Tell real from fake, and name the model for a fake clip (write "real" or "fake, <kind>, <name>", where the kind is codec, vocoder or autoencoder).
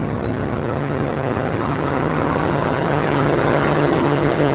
fake, vocoder, HiFi-GAN